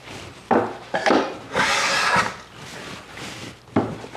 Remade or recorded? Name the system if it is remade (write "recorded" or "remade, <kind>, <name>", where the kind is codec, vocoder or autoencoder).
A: recorded